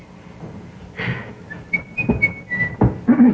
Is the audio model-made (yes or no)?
no